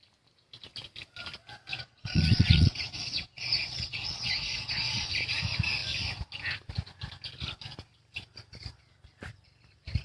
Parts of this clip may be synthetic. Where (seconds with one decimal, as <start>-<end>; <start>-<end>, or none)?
1.7-5.1